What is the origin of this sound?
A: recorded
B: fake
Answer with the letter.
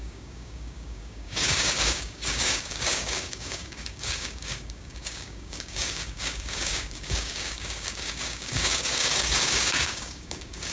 B